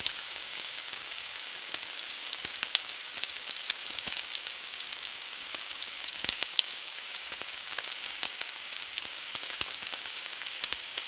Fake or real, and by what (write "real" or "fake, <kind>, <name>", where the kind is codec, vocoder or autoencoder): fake, codec, DAC